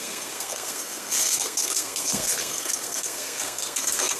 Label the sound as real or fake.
fake